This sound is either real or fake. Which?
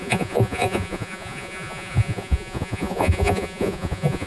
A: fake